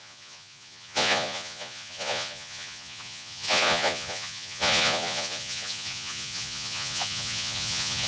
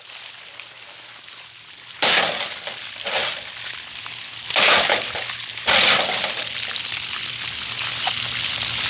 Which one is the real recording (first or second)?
second